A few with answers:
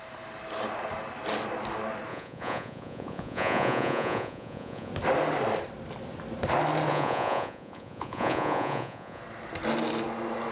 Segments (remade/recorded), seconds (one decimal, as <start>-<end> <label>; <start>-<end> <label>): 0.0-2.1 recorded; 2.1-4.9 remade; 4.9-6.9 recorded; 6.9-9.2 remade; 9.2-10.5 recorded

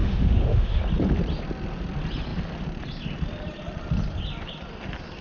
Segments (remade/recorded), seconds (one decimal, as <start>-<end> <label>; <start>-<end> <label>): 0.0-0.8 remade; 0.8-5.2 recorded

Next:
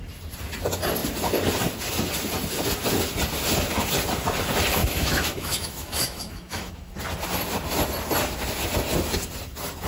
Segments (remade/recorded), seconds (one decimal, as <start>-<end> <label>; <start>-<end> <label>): 0.0-4.8 recorded; 4.8-6.9 remade; 6.9-9.9 recorded

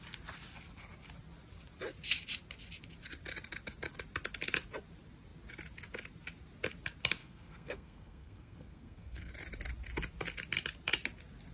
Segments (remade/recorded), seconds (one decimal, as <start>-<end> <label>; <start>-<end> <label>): 0.0-7.2 recorded; 7.2-9.3 remade; 9.3-11.5 recorded

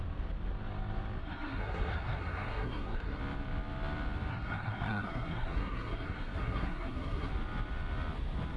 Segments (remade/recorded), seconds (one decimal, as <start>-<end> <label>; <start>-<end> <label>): 0.0-1.2 recorded; 1.2-3.2 remade; 3.2-4.3 recorded; 4.3-7.3 remade; 7.3-8.6 recorded

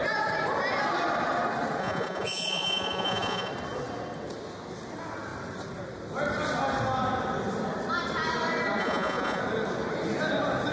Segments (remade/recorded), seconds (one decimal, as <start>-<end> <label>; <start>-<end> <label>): 0.0-1.8 recorded; 1.8-3.5 remade; 3.5-8.8 recorded; 8.8-9.4 remade; 9.4-10.7 recorded

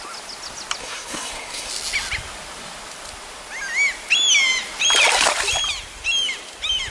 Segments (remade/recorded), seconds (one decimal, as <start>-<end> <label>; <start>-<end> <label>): 0.0-0.8 recorded; 0.8-1.7 remade; 1.7-6.9 recorded

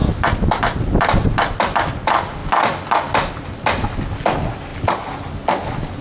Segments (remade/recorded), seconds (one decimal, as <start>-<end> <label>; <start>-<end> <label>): 0.0-6.0 recorded